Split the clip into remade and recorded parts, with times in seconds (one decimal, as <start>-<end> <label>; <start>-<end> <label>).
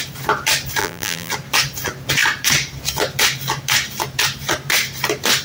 0.0-0.8 recorded; 0.8-1.3 remade; 1.3-5.4 recorded